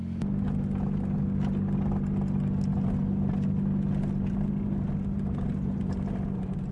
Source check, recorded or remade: recorded